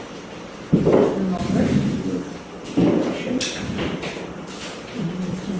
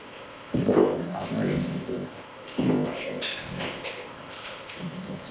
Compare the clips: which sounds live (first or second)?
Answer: first